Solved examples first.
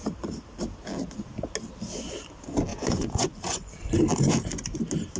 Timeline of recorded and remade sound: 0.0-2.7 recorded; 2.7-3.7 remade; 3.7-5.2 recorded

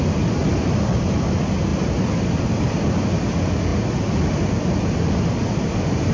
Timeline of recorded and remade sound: 0.0-0.4 recorded; 0.4-1.0 remade; 1.0-1.7 recorded; 1.7-3.0 remade; 3.0-6.1 recorded

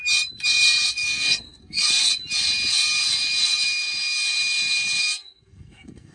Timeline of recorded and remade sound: 0.0-0.9 recorded; 0.9-2.1 remade; 2.1-5.0 recorded; 5.0-6.1 remade

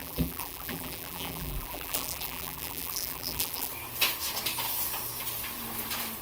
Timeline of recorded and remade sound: 0.0-3.7 remade; 3.7-6.2 recorded

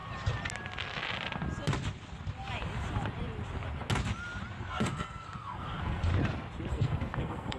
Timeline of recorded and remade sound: 0.0-4.6 recorded; 4.6-6.1 remade; 6.1-6.7 recorded; 6.7-7.6 remade

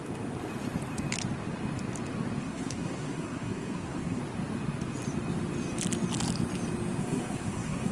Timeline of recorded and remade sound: 0.0-2.4 recorded; 2.4-4.2 remade; 4.2-7.0 recorded; 7.0-7.9 remade

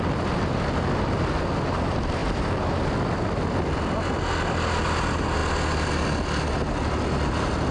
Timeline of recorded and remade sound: 0.0-7.7 recorded

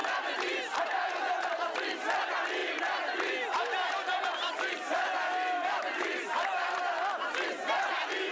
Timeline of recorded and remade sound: 0.0-1.1 remade; 1.1-2.6 recorded; 2.6-6.8 remade; 6.8-8.3 recorded